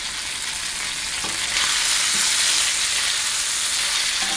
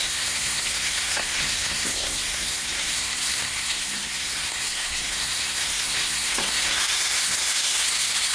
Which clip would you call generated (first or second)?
second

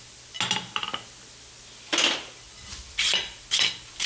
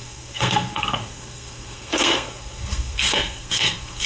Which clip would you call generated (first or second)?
second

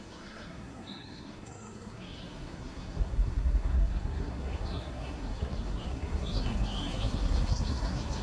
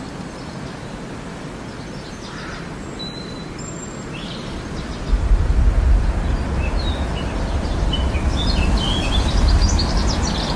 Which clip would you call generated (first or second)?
first